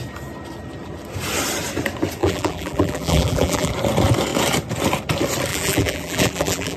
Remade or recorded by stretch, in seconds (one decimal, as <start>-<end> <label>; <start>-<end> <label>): 0.0-2.2 recorded; 2.2-3.7 remade; 3.7-5.5 recorded; 5.5-6.8 remade